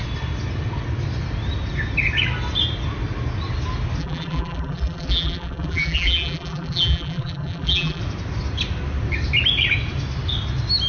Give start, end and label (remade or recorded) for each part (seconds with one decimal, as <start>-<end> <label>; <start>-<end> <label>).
0.0-4.0 recorded; 4.0-8.0 remade; 8.0-10.9 recorded